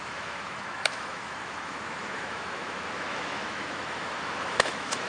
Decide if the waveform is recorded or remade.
remade